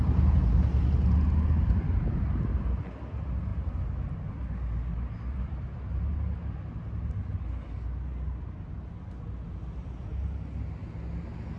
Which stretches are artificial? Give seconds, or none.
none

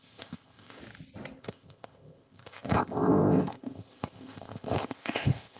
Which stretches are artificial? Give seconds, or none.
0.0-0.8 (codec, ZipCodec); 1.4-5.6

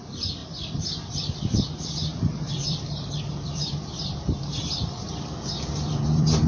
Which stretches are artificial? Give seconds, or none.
0.0-6.5 (vocoder, BigVGAN v2)